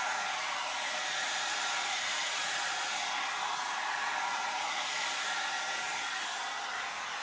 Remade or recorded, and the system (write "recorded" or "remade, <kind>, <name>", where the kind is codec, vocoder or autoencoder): remade, vocoder, BigVGAN v2